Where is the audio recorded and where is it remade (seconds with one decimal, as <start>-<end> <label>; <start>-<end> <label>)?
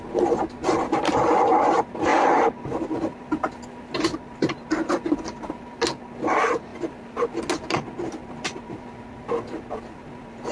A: 0.0-10.5 recorded